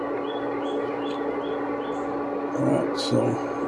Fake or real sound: real